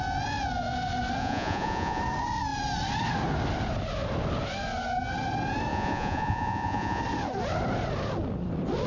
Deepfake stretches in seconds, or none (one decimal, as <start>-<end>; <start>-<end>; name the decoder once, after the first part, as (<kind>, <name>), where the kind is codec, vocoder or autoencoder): 1.2-2.0 (vocoder, Vocos); 5.7-7.0